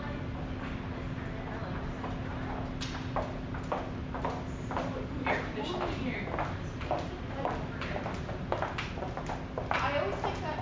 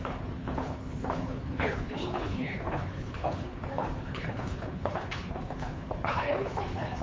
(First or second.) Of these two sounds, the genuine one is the first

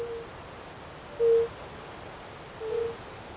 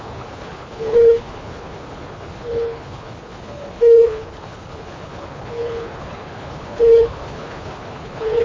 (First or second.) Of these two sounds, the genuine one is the first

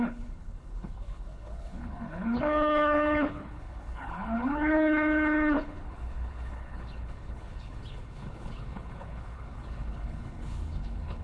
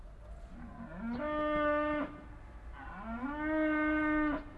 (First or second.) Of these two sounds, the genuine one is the second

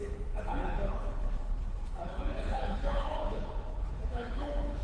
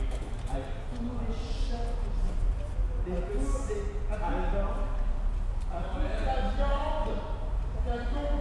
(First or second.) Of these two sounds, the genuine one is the second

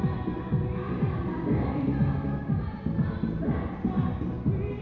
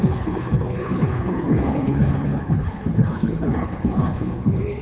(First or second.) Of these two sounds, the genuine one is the first